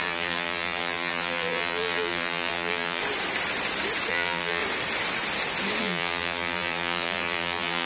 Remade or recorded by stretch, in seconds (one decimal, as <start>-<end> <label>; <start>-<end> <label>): 0.0-3.0 remade; 3.0-4.1 recorded; 4.1-4.6 remade; 4.6-5.8 recorded; 5.8-7.9 remade